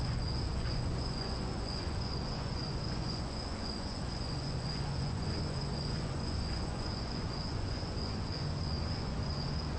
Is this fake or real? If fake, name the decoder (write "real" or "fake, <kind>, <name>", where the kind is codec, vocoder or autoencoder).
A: fake, vocoder, Vocos